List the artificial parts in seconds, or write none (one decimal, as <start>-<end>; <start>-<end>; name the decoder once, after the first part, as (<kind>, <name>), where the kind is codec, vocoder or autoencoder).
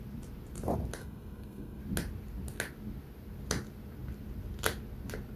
1.0-1.8 (codec, SNAC)